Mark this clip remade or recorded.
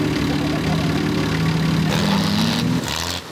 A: recorded